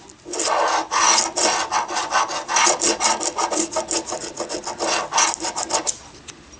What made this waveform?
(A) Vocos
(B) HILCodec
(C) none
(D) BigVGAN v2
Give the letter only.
C